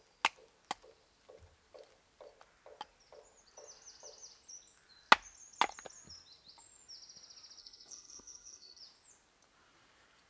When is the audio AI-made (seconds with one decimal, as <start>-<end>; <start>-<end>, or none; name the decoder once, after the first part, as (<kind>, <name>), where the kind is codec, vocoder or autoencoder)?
7.6-8.8 (codec, SNAC)